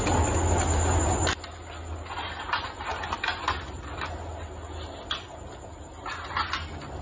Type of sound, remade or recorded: recorded